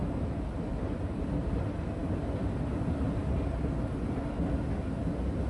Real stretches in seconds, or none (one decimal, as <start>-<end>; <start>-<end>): 0.0-5.5